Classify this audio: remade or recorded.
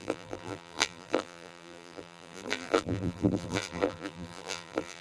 remade